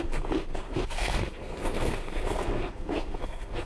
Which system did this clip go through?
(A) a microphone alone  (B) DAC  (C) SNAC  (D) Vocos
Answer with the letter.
C